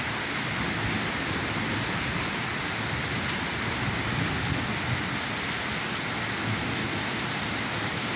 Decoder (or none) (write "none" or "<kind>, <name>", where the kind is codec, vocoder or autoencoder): none